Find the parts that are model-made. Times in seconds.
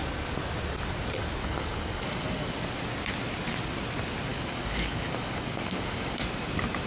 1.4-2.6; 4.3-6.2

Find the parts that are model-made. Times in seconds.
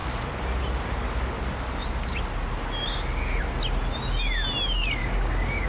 5.0-5.7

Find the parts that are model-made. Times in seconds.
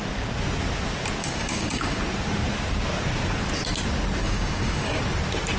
1.2-2.0; 4.2-5.0